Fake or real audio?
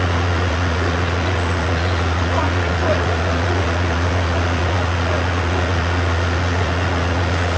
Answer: fake